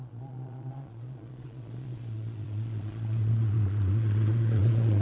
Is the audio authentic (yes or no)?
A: no